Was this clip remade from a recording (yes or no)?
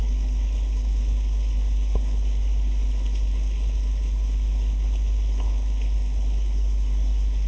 yes